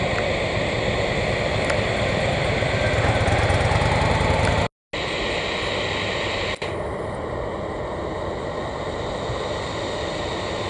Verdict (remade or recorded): recorded